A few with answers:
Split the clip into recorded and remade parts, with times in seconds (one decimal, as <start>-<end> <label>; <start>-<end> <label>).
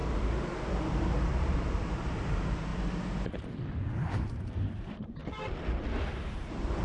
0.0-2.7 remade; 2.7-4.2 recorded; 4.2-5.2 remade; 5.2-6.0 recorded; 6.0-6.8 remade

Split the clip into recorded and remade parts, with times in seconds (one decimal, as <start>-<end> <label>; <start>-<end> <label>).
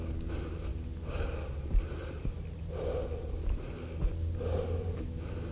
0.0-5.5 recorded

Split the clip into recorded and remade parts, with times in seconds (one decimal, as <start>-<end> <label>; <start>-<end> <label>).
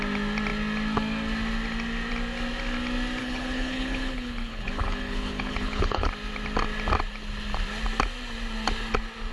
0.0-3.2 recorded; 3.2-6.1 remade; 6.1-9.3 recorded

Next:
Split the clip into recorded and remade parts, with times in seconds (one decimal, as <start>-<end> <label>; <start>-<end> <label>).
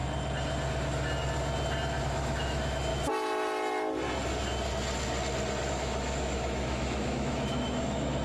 0.0-2.0 recorded; 2.0-2.9 remade; 2.9-5.7 recorded; 5.7-8.2 remade